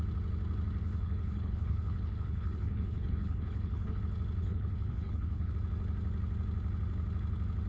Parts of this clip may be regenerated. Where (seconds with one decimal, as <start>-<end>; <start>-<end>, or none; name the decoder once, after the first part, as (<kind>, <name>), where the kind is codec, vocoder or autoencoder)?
0.8-4.0 (codec, HILCodec); 4.4-5.5